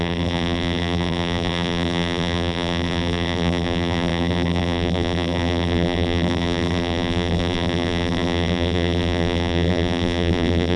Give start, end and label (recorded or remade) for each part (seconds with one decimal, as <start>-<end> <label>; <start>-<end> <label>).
0.0-10.8 remade